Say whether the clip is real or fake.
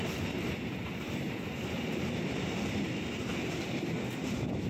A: real